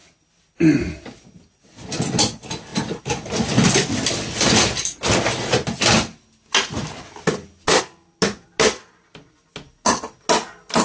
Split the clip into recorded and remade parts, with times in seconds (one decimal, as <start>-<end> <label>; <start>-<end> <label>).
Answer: 0.0-10.8 recorded

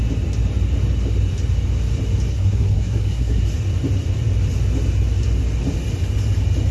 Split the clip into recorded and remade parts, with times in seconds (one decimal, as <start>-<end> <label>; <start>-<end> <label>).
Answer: 0.0-2.3 recorded; 2.3-3.4 remade; 3.4-6.7 recorded